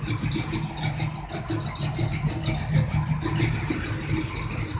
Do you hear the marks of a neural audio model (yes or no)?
no